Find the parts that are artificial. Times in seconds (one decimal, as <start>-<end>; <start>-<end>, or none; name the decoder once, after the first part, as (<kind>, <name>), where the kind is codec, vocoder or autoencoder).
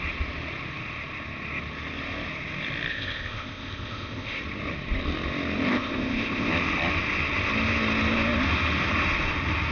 2.9-4.4 (codec, ZipCodec); 5.7-6.5